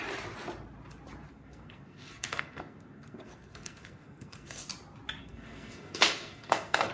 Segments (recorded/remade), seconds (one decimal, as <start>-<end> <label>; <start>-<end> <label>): 0.0-1.3 recorded; 1.3-4.7 remade; 4.7-5.2 recorded; 5.2-6.9 remade